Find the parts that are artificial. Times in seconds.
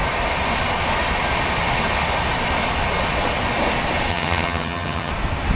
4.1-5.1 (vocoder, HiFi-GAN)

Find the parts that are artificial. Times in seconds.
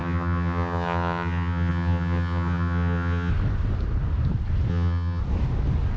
0.0-3.3 (vocoder, HiFi-GAN); 4.7-5.2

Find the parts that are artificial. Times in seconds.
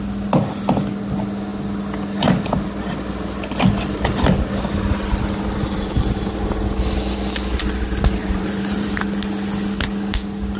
8.2-8.9 (vocoder, BigVGAN v2)